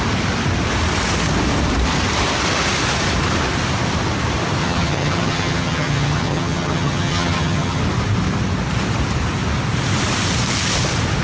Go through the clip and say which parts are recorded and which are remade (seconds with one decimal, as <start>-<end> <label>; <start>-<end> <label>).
0.0-4.6 recorded; 4.6-7.8 remade; 7.8-11.2 recorded